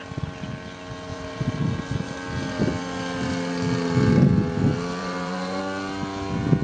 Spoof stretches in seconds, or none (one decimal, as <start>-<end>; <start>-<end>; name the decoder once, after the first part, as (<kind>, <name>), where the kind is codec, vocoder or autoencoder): 1.1-1.6 (vocoder, BigVGAN v2); 5.0-5.6